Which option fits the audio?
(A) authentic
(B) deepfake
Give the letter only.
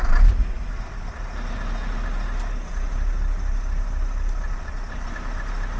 A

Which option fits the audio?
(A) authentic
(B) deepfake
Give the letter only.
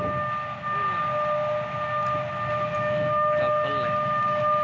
A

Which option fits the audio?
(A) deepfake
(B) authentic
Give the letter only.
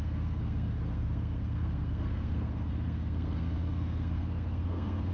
A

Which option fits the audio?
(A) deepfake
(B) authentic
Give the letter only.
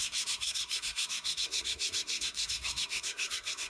A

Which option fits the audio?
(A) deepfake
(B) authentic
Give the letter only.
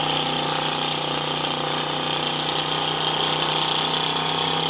B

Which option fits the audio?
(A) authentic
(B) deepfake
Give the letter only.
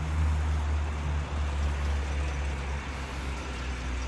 A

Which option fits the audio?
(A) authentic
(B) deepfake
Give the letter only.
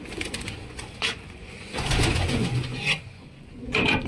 B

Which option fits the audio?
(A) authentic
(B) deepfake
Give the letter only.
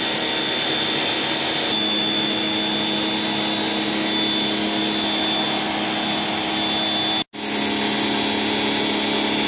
A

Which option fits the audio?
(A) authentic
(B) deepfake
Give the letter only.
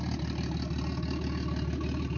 A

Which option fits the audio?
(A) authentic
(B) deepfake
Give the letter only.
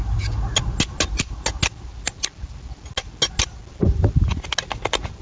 A